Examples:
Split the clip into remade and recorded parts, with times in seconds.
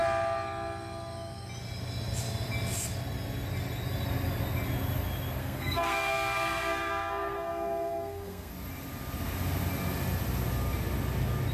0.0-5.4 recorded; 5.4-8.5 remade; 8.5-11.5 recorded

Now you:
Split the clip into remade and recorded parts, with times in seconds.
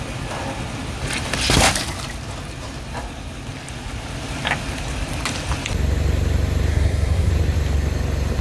0.0-6.7 recorded; 6.7-7.3 remade; 7.3-8.4 recorded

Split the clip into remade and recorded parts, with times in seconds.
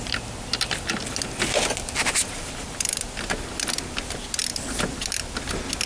0.0-5.9 recorded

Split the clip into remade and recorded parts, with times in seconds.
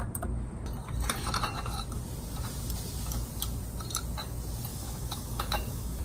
0.0-4.7 recorded; 4.7-6.0 remade